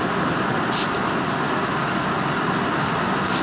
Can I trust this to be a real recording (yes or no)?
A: yes